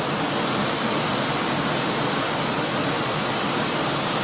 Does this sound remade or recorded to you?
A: recorded